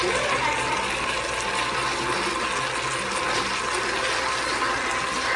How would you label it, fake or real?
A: real